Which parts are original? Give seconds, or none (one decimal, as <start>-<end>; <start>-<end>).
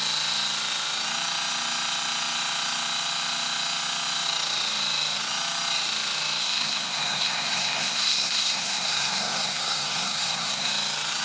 0.0-6.4; 10.7-11.2